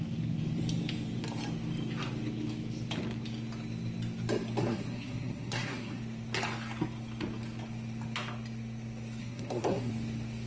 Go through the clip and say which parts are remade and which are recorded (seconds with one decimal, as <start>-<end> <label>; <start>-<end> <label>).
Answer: 0.0-4.6 recorded; 4.6-6.0 remade; 6.0-9.2 recorded; 9.2-9.9 remade; 9.9-10.5 recorded